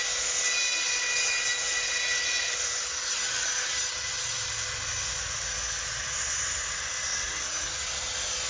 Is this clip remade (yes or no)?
no